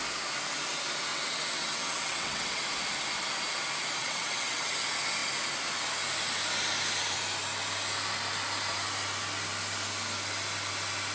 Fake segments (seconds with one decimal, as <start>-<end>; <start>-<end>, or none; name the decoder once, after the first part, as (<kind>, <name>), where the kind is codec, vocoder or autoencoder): 1.1-2.6 (vocoder, WaveNeXt); 4.0-4.7